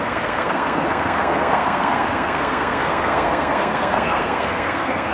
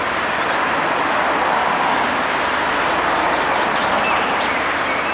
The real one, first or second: second